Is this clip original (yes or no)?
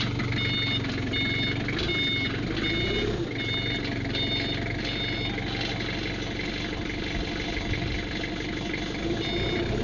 yes